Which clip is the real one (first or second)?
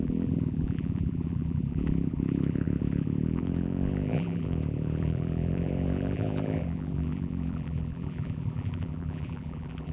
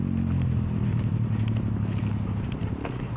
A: second